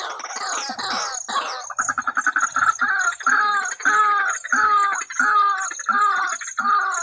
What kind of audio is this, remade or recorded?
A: recorded